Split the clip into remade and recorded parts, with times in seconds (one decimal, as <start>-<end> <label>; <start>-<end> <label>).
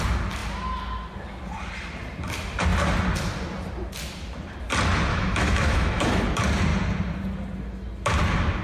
0.0-5.1 recorded; 5.1-6.2 remade; 6.2-8.6 recorded